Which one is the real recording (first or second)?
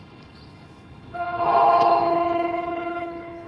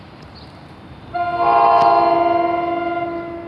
second